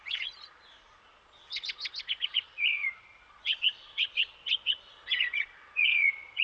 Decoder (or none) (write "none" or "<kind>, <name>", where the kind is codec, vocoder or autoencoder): vocoder, Vocos